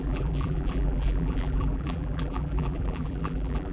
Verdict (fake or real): fake